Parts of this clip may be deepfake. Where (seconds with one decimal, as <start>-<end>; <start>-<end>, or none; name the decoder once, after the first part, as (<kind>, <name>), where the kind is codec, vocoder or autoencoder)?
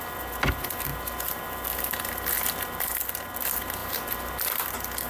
none